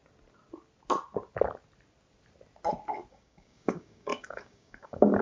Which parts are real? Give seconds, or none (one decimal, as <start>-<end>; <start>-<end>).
0.0-3.1